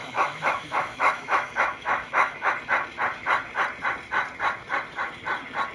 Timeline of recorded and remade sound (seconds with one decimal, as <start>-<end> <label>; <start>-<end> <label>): 0.0-2.5 remade; 2.5-5.7 recorded